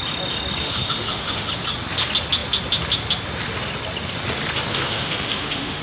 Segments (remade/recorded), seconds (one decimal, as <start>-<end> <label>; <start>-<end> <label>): 0.0-0.6 recorded; 0.6-1.5 remade; 1.5-4.7 recorded; 4.7-5.8 remade